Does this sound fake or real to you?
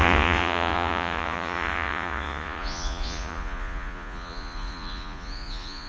fake